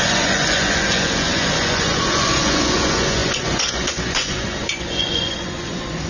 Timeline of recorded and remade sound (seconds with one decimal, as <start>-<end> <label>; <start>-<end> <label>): 0.0-6.1 remade